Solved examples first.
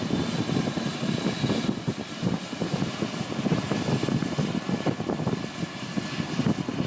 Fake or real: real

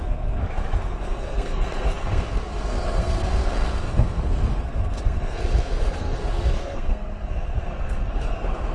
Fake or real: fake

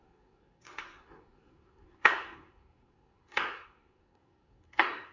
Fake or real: fake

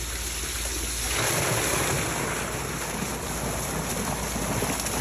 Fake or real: real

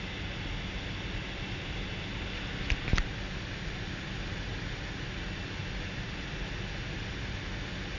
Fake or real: real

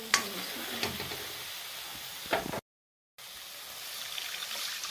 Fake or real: real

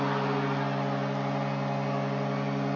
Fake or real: real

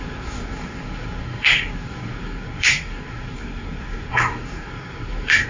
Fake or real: fake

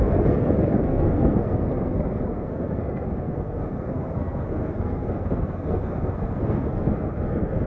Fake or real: fake